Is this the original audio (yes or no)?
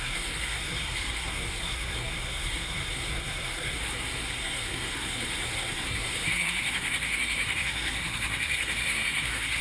no